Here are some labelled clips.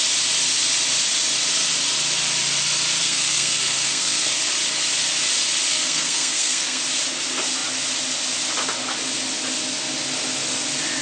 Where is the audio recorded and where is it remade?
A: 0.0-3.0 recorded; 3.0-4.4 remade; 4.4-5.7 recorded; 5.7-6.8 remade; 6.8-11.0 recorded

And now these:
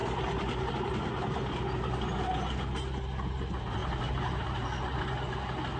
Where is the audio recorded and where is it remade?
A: 0.0-3.8 recorded; 3.8-5.0 remade; 5.0-5.8 recorded

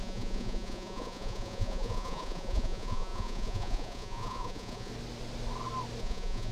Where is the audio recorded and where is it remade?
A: 0.0-4.9 remade; 4.9-6.0 recorded; 6.0-6.5 remade

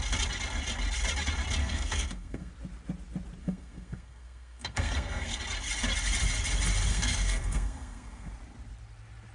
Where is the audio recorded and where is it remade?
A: 0.0-1.6 recorded; 1.6-2.5 remade; 2.5-3.4 recorded; 3.4-5.4 remade; 5.4-6.9 recorded; 6.9-8.3 remade; 8.3-9.3 recorded

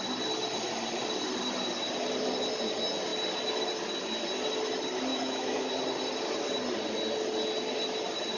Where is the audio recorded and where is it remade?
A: 0.0-5.1 recorded; 5.1-5.7 remade; 5.7-8.4 recorded